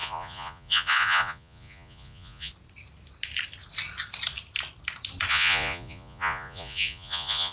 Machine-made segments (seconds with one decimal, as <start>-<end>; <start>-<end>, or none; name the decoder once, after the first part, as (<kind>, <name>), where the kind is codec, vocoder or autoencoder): 0.0-2.5 (vocoder, Vocos); 5.3-7.5